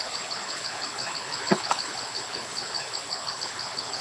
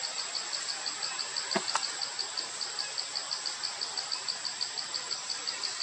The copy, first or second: first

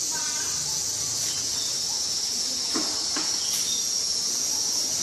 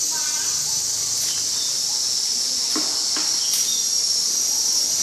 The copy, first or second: first